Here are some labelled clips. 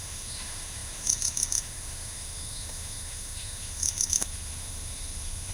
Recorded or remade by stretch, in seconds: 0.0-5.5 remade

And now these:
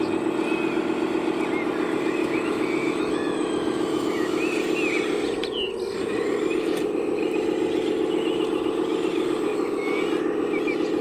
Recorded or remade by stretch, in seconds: 0.0-2.2 recorded; 2.2-4.4 remade; 4.4-9.5 recorded; 9.5-10.0 remade; 10.0-11.0 recorded

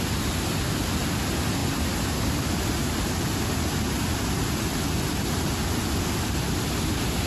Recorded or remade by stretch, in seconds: 0.0-7.3 recorded

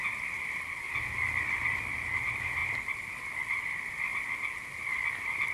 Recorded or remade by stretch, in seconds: 0.0-5.5 recorded

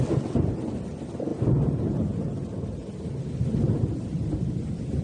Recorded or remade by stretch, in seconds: 0.0-5.0 recorded

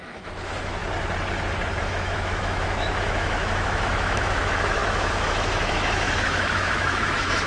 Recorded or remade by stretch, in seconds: 0.0-0.8 remade; 0.8-1.8 recorded; 1.8-7.5 remade

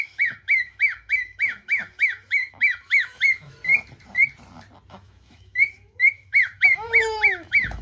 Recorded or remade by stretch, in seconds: 0.0-3.6 remade; 3.6-4.9 recorded; 4.9-7.8 remade